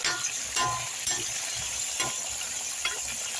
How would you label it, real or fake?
real